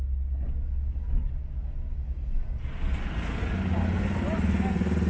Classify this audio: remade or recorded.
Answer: recorded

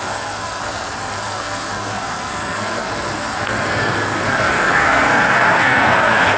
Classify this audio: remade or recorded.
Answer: remade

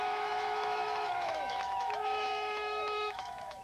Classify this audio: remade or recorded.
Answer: remade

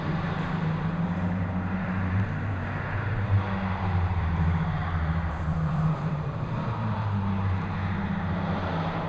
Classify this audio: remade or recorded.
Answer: remade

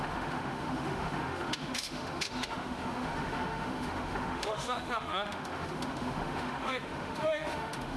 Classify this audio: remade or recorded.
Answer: remade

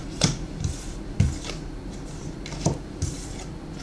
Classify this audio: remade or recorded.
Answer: recorded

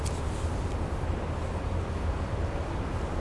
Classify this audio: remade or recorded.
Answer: recorded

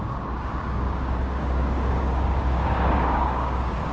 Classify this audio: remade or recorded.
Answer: remade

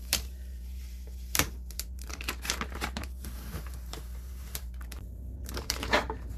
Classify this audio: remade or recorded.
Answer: remade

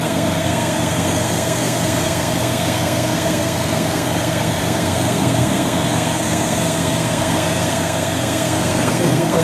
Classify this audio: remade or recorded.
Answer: remade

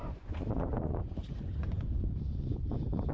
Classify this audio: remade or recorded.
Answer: remade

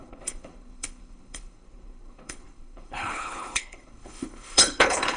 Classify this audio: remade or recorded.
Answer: remade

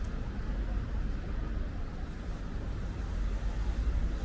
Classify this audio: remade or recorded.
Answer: recorded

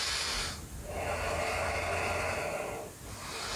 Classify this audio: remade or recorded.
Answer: recorded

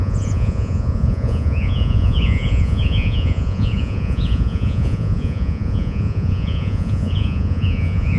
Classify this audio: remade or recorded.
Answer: remade